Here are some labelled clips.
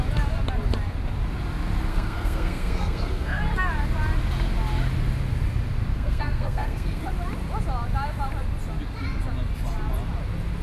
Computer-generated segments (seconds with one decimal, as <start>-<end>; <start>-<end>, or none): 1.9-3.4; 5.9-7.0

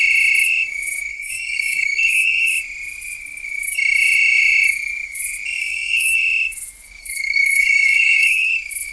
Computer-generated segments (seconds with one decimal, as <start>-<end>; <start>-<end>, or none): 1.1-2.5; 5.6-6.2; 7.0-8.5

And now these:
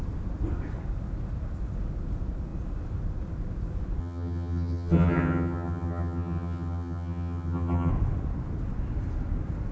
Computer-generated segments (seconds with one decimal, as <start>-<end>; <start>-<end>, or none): 4.0-7.9

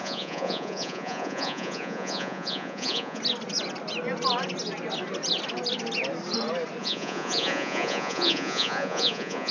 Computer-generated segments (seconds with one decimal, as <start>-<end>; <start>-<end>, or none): 0.0-3.2; 6.8-9.5

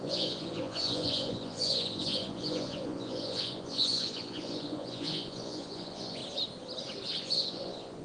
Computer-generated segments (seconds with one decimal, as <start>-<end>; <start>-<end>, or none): 0.0-6.2; 7.2-8.0